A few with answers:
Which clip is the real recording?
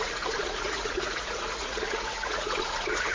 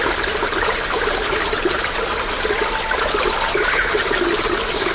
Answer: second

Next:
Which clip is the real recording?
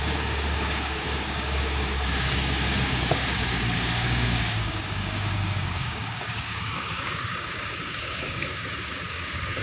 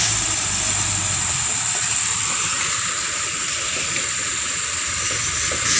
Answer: second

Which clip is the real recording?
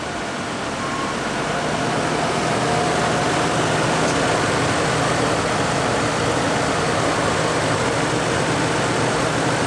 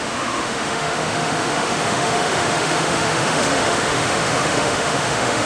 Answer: first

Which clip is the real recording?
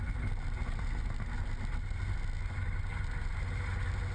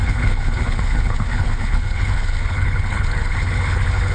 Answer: first